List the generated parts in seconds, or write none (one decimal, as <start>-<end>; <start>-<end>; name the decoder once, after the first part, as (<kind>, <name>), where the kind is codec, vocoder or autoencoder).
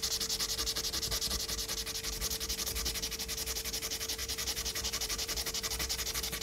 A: 4.2-5.5 (vocoder, BigVGAN v2)